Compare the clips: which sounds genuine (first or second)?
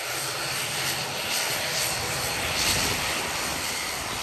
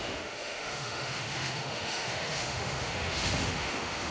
first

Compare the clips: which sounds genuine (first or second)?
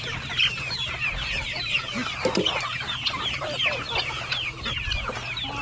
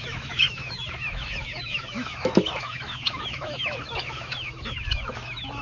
first